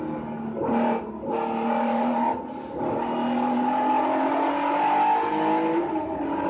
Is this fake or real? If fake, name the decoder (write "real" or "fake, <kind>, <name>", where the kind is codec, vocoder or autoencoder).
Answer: real